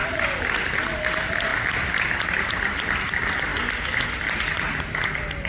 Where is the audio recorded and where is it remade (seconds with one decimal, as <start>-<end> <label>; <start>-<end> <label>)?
0.0-5.5 recorded